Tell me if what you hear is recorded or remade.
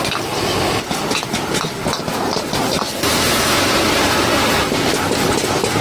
recorded